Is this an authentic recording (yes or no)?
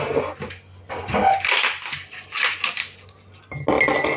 yes